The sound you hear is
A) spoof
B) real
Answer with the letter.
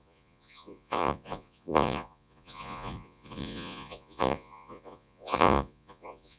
A